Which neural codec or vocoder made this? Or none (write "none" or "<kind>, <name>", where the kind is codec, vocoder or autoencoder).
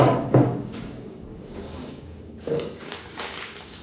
codec, DAC